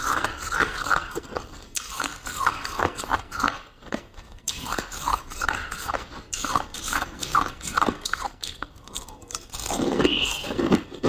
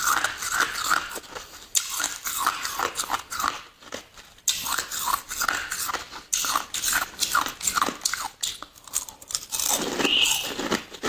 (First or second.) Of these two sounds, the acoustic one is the second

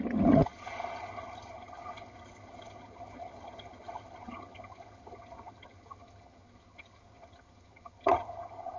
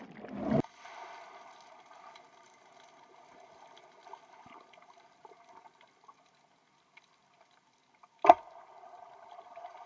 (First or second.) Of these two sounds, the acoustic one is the second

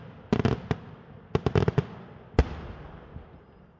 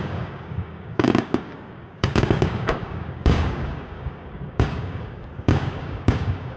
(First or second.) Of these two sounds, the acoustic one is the first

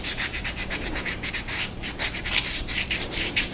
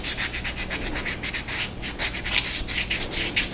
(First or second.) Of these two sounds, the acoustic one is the second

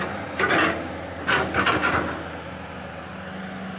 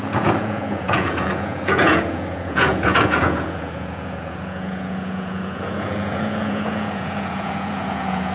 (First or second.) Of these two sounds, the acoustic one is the first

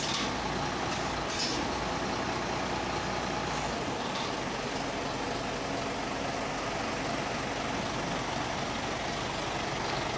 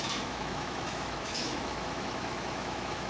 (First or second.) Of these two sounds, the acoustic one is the first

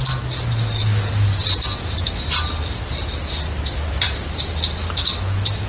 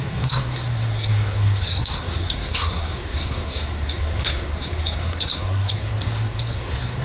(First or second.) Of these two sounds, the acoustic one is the first